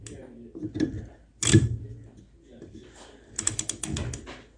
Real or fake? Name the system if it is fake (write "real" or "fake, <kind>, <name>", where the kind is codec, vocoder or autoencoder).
real